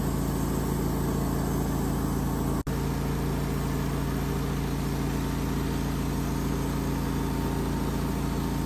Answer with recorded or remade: recorded